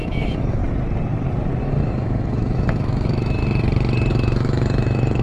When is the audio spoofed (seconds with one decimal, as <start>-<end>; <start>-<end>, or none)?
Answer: 0.0-0.6; 1.6-3.4; 4.1-5.2